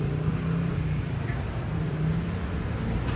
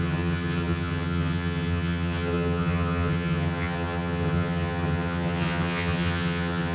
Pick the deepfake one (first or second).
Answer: second